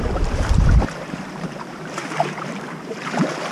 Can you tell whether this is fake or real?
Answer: fake